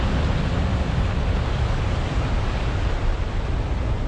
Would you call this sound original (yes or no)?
yes